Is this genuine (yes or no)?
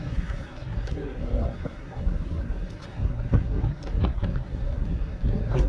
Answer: no